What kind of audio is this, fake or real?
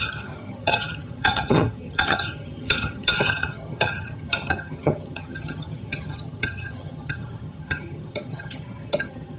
fake